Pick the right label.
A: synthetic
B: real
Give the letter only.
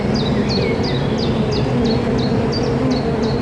B